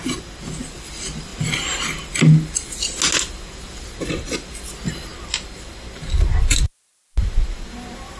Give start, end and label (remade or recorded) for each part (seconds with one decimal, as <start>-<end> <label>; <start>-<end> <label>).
0.0-8.2 recorded